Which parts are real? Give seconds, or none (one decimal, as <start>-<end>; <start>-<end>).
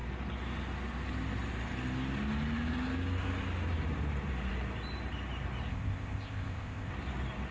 0.0-5.7; 6.9-7.5